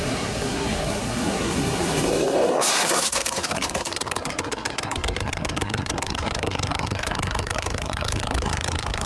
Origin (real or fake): fake